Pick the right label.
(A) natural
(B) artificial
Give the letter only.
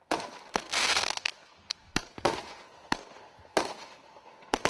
B